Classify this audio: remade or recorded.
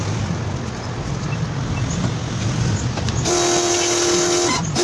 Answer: recorded